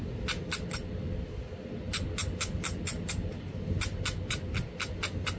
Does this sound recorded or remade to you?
recorded